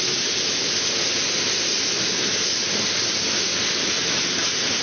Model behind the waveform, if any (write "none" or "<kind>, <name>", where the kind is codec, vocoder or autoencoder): none